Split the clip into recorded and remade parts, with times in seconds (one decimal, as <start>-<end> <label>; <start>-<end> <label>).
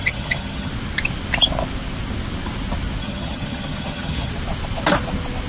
0.0-0.7 remade; 0.7-3.0 recorded; 3.0-4.3 remade; 4.3-5.5 recorded